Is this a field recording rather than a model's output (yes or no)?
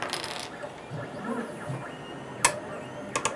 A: yes